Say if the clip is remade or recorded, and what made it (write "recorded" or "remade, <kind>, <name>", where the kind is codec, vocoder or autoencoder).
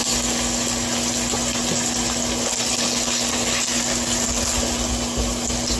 recorded